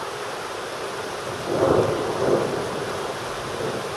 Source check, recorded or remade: recorded